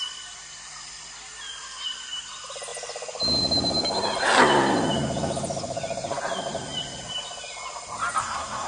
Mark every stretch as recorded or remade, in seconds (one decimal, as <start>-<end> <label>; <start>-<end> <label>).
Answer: 0.0-8.2 recorded; 8.2-8.7 remade